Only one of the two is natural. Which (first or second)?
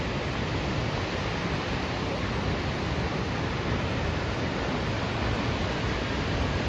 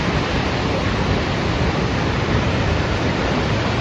first